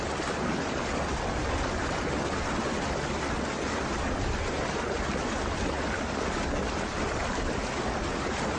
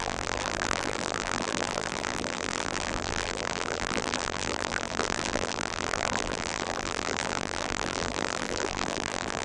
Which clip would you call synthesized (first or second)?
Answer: second